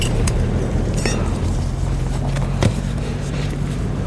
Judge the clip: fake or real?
fake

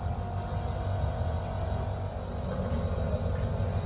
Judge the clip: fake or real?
real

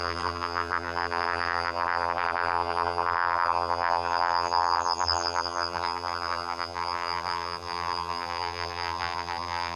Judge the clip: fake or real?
fake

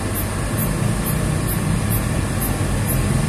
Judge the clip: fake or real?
real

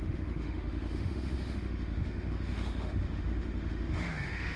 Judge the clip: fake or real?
fake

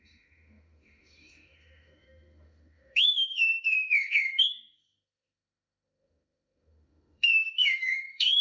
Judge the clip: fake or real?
fake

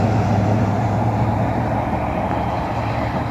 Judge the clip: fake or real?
fake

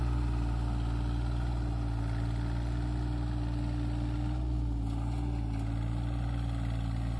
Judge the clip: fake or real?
real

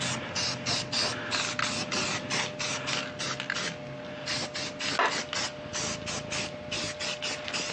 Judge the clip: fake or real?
real